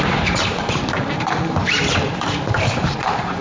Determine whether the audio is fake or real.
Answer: real